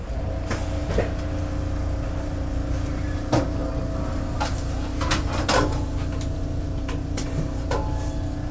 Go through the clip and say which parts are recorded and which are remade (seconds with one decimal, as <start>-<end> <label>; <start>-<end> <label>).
0.0-8.5 recorded